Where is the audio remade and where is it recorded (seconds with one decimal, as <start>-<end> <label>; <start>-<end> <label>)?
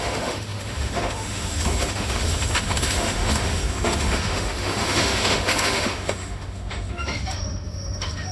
0.0-8.3 remade